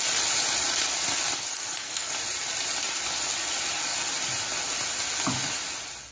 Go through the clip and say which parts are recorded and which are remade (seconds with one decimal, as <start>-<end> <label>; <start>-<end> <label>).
0.0-1.5 recorded; 1.5-2.1 remade; 2.1-6.1 recorded